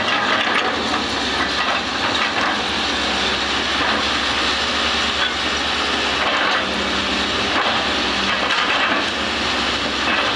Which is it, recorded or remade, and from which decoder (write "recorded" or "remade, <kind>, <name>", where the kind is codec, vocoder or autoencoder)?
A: recorded